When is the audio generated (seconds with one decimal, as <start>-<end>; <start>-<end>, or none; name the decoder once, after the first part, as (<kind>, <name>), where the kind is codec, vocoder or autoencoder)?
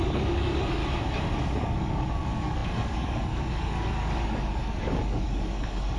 0.0-0.8 (codec, DAC); 1.4-6.0